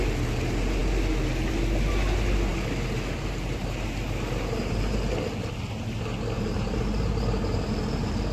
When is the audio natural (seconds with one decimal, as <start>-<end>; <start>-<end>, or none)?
0.0-8.3